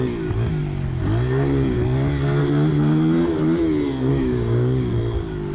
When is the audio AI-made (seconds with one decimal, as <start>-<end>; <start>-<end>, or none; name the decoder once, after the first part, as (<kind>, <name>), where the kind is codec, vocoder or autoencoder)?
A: 4.1-4.9 (codec, DAC)